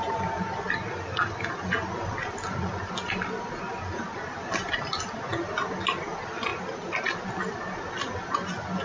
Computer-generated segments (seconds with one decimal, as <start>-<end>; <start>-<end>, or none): none